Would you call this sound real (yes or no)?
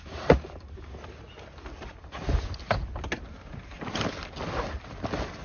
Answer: yes